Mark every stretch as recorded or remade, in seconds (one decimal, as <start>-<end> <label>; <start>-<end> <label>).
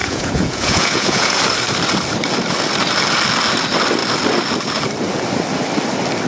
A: 0.0-1.4 remade; 1.4-6.3 recorded